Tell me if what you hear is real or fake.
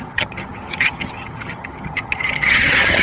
fake